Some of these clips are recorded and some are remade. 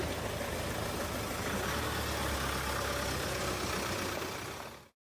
recorded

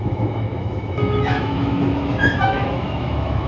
remade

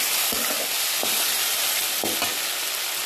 recorded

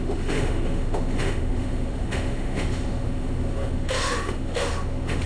remade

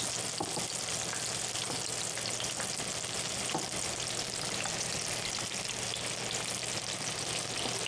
recorded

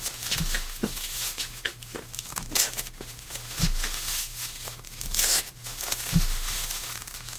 remade